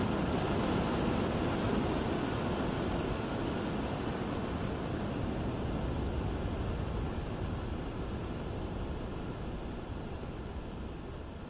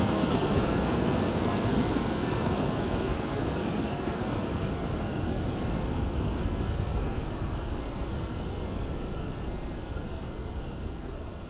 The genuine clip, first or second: first